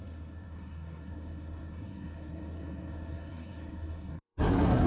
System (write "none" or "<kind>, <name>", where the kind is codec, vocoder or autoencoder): codec, SNAC